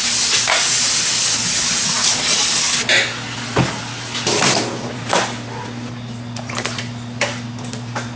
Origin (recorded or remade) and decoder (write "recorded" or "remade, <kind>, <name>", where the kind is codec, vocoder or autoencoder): recorded